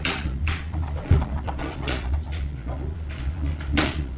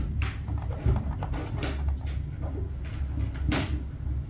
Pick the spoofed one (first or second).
first